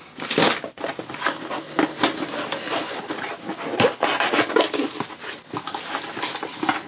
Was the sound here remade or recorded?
recorded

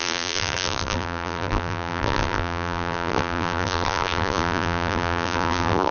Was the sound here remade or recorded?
remade